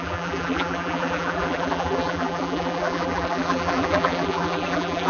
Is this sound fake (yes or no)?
yes